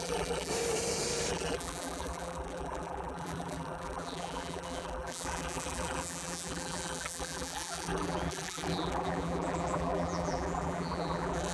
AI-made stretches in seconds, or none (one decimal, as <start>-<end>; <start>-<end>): 0.0-0.5; 1.3-11.5